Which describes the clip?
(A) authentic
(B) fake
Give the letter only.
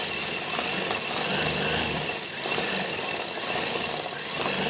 A